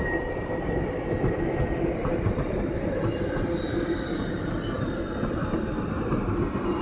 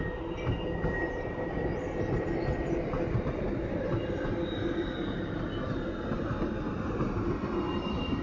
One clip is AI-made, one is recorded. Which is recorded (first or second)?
second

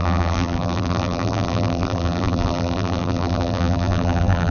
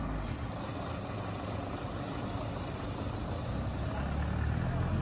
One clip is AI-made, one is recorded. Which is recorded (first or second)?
second